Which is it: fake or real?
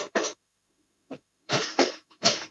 fake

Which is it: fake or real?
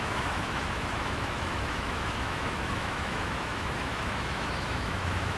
fake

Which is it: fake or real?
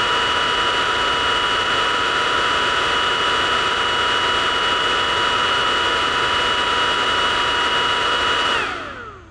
real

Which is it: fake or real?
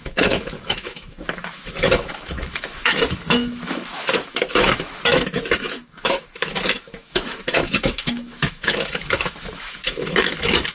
fake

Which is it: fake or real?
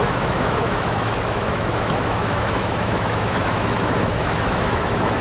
fake